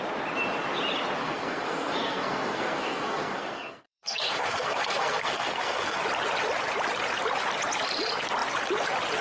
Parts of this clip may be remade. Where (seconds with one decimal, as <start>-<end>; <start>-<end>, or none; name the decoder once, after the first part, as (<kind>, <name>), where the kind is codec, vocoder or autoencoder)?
1.2-6.0 (codec, SNAC)